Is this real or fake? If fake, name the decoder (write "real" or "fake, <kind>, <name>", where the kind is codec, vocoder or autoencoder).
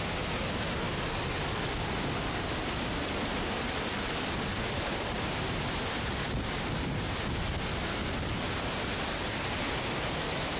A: real